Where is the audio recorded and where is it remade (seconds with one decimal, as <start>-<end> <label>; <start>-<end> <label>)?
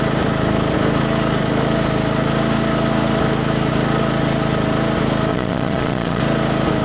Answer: 0.0-5.3 recorded; 5.3-6.2 remade; 6.2-6.8 recorded